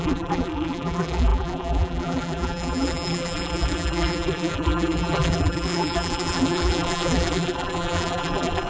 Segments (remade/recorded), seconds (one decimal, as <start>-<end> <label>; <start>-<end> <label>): 0.0-8.7 remade